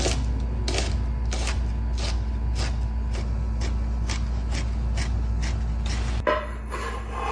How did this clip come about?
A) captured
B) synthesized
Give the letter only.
A